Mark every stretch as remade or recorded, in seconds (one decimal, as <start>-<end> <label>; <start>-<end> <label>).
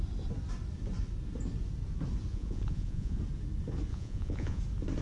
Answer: 0.0-2.3 recorded; 2.3-3.2 remade; 3.2-3.9 recorded; 3.9-4.6 remade; 4.6-5.0 recorded